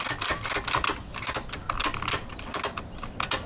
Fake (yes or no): no